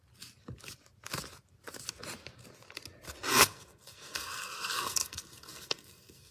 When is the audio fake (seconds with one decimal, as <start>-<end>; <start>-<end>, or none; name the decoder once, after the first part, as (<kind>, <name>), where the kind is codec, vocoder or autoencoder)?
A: 3.3-6.3 (codec, SNAC)